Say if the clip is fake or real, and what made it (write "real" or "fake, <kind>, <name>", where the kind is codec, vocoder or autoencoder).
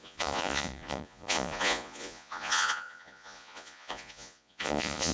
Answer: fake, vocoder, Vocos